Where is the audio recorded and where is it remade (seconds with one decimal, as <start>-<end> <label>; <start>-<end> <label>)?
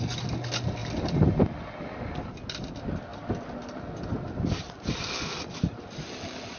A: 0.0-6.6 recorded